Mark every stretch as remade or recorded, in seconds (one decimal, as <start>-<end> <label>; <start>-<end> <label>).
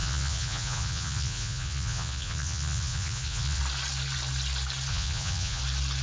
0.0-3.6 remade; 3.6-4.9 recorded; 4.9-5.6 remade; 5.6-6.0 recorded